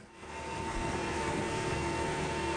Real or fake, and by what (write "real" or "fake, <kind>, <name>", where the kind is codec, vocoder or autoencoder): fake, codec, SNAC